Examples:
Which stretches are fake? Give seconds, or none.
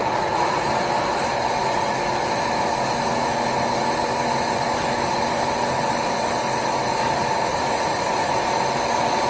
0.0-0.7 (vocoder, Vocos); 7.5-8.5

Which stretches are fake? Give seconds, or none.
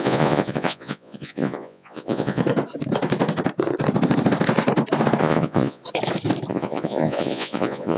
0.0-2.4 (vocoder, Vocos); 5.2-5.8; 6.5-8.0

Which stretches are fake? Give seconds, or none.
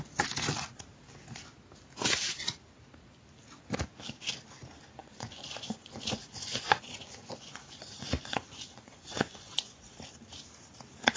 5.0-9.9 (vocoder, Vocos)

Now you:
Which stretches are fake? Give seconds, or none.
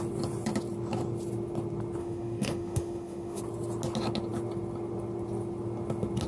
2.0-3.4 (autoencoder, DAC-VAE)